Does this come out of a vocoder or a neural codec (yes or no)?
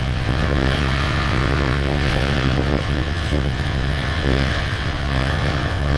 yes